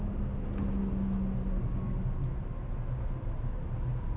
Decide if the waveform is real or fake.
real